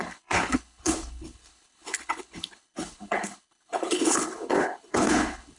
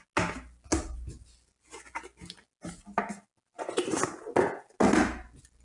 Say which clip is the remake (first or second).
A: first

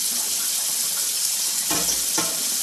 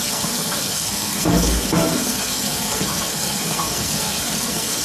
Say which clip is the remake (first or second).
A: second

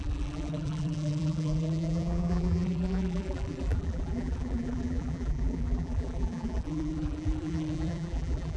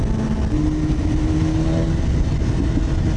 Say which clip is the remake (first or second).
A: first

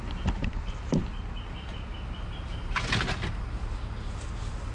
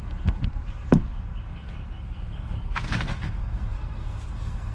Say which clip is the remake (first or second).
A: second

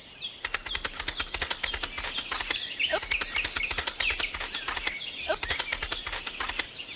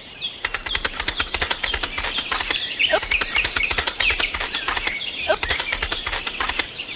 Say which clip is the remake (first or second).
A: second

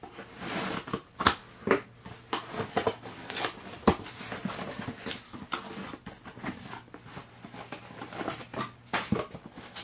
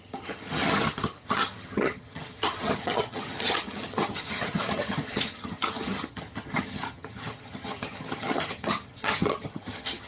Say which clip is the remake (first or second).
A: second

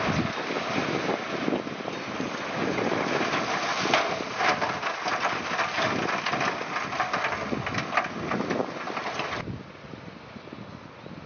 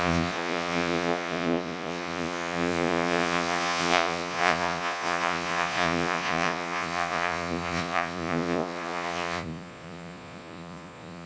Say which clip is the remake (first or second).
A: second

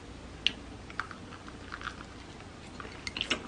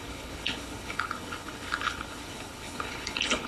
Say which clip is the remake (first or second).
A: second